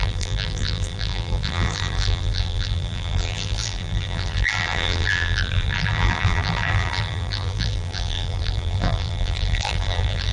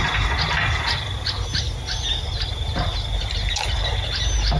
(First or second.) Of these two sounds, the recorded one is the second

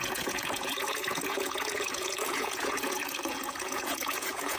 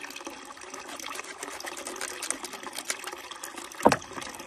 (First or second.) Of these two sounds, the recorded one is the second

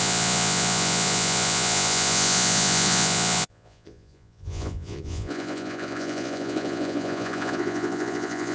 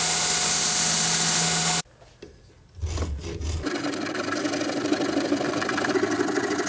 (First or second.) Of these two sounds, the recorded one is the second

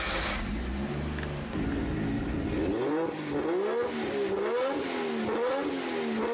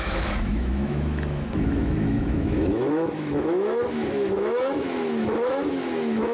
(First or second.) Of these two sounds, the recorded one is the first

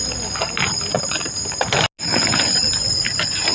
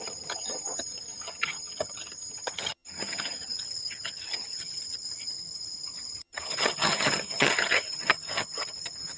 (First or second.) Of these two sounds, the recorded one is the first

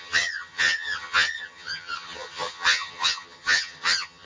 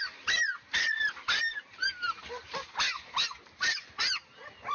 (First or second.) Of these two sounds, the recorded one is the second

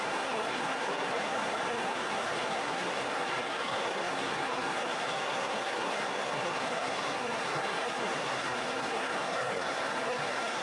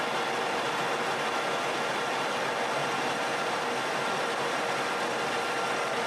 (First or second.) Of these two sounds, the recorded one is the second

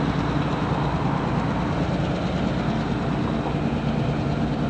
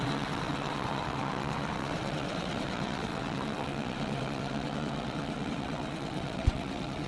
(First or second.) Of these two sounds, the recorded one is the first